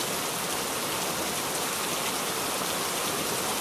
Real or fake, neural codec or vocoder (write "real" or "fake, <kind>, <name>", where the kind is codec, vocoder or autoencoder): real